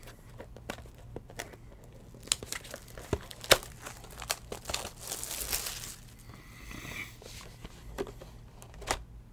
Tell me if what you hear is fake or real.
real